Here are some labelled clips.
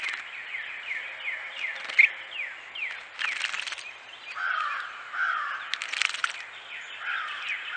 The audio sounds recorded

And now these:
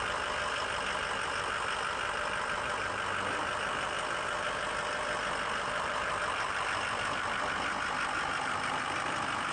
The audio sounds remade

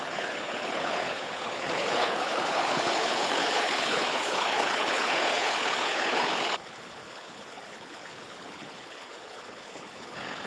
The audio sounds remade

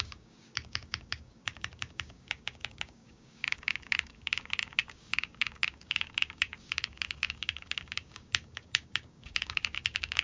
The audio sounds remade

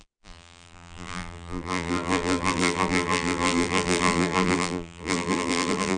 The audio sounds remade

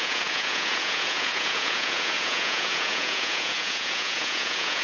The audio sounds remade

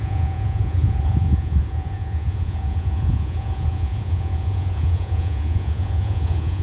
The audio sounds remade